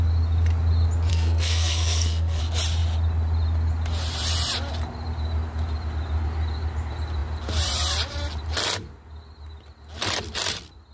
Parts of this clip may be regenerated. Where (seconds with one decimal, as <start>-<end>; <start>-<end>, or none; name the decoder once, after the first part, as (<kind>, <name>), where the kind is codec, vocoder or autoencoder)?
1.1-2.4 (codec, SNAC)